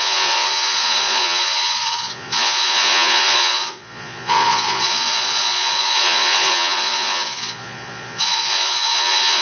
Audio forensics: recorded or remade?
remade